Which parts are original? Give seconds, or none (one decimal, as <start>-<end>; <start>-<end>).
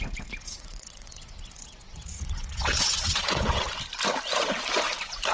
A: 0.0-0.4; 3.6-5.3